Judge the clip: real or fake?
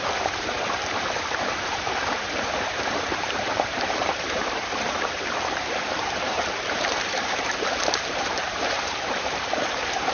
fake